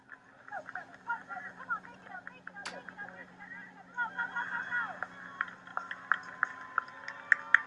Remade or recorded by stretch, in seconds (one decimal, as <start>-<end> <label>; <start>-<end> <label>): 0.0-0.9 recorded; 0.9-2.1 remade; 2.1-7.7 recorded